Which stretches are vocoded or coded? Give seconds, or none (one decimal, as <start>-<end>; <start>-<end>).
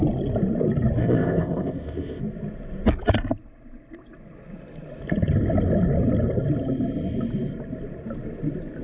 1.0-2.2